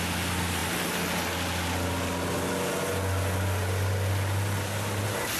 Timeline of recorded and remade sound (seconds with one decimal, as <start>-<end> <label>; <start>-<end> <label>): 0.0-5.4 recorded